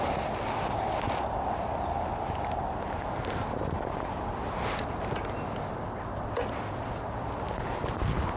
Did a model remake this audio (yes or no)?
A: no